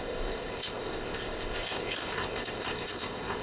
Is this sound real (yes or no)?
no